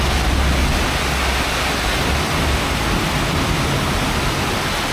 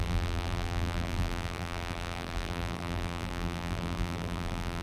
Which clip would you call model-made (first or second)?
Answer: second